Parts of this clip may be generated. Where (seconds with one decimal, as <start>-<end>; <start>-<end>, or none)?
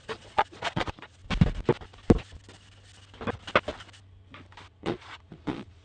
0.0-1.2; 4.7-5.8